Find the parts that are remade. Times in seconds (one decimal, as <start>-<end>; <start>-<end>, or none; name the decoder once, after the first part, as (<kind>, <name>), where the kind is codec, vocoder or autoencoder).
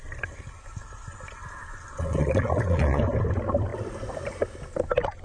1.9-3.0 (vocoder, Vocos)